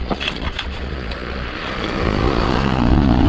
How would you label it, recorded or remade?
remade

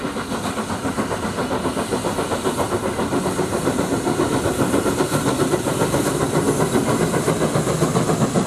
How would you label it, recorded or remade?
recorded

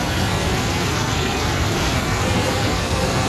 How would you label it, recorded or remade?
remade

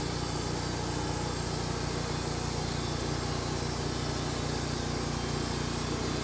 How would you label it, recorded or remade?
recorded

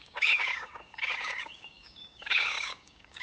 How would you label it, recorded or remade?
remade